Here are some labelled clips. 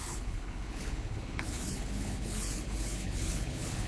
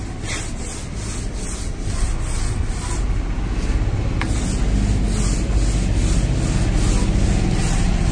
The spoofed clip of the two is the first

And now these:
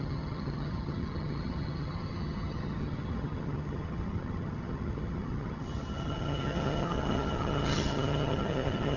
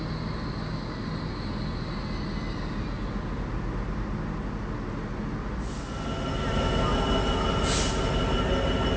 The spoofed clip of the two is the first